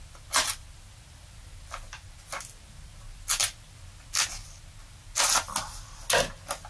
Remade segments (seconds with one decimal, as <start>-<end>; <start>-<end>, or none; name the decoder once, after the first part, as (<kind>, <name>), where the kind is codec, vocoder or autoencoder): none